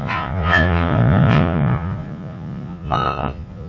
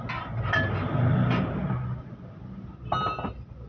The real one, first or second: second